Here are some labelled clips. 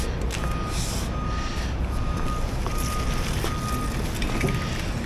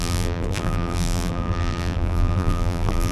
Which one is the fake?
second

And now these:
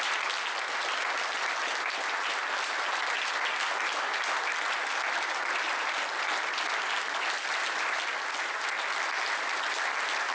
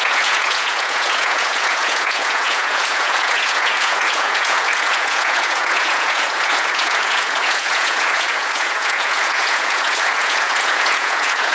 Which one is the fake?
second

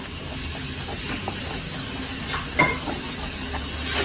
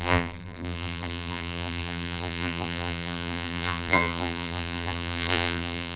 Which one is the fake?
second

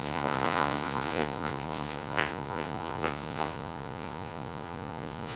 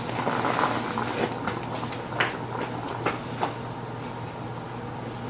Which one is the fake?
first